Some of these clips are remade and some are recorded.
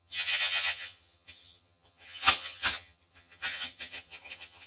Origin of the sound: remade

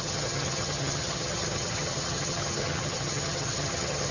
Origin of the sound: remade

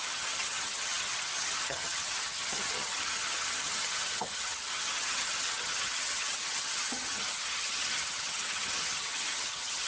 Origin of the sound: remade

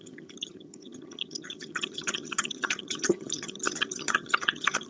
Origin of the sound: remade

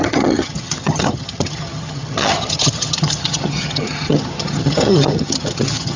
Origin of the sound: remade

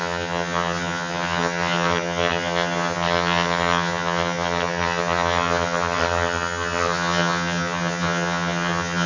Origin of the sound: remade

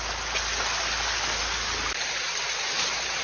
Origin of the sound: recorded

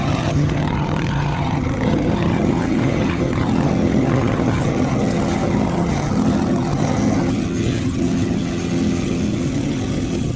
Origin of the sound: remade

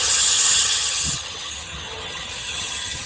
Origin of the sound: remade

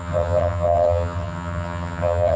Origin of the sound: remade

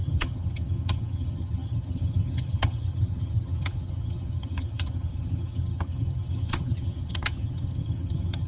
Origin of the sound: remade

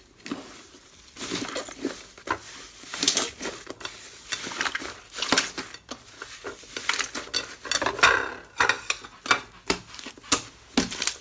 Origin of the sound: recorded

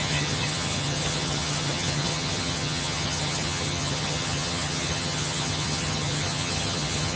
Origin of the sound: remade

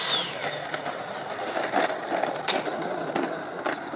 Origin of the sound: recorded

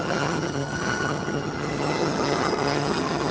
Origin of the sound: remade